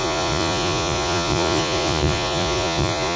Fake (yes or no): yes